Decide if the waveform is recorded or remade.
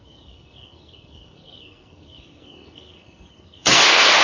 remade